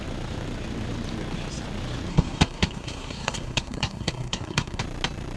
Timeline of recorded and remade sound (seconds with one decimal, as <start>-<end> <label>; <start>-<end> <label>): 0.0-2.1 recorded; 2.1-4.8 remade; 4.8-5.4 recorded